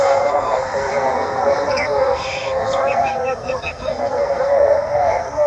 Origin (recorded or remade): remade